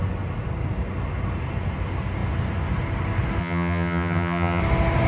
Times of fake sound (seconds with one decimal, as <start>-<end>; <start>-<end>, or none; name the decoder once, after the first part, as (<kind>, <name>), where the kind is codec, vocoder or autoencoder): 3.4-4.6 (vocoder, HiFi-GAN)